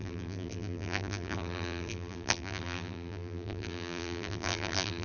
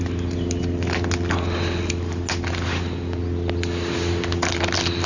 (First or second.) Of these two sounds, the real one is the second